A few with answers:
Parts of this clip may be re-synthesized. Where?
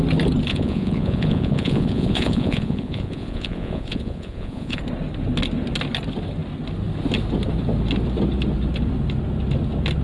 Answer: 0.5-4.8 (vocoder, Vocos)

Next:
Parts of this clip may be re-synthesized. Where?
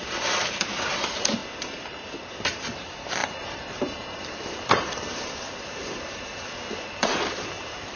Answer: 0.0-8.0 (vocoder, BigVGAN v2)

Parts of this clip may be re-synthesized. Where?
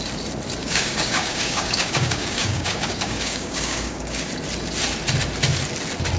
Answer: 0.6-4.3 (codec, DAC)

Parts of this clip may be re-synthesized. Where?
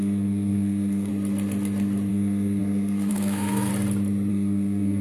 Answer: 0.0-1.1 (codec, SNAC); 2.1-3.7; 4.3-5.0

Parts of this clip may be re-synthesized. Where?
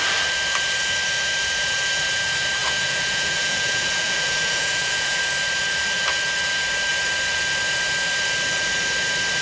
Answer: 2.6-5.2 (vocoder, Vocos)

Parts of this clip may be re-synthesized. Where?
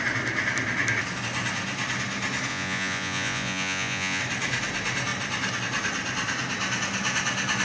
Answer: 2.5-4.2 (vocoder, Vocos)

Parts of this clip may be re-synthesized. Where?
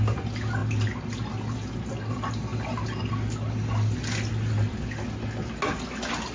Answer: none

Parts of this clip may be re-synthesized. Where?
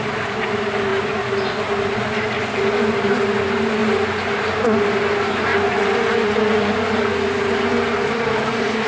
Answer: none